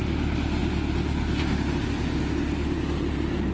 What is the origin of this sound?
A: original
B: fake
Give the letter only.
A